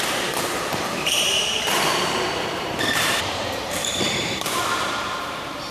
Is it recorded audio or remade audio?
remade